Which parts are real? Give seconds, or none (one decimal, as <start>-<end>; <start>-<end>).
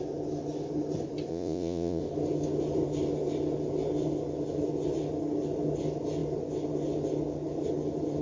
0.0-1.3; 2.0-8.2